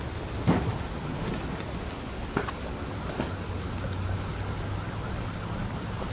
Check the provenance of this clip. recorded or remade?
recorded